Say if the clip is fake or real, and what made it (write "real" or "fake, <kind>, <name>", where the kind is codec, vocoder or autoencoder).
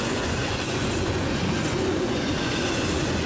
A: fake, vocoder, Vocos